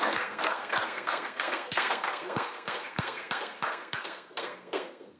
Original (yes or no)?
no